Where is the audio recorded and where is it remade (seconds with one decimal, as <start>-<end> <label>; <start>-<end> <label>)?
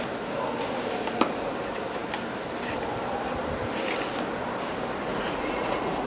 0.0-5.1 recorded; 5.1-6.1 remade